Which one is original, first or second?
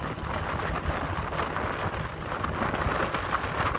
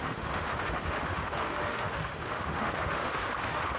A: first